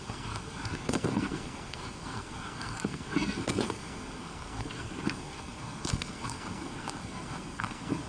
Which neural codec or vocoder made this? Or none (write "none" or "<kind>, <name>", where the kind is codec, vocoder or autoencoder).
codec, SNAC